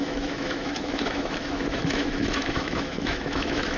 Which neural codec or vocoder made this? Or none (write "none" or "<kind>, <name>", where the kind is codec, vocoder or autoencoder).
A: autoencoder, DAC-VAE